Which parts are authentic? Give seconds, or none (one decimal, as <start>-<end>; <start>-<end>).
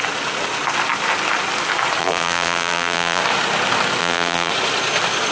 0.0-2.0; 3.2-4.0; 4.5-5.3